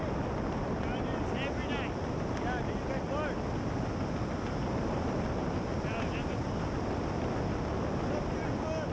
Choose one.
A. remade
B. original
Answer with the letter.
B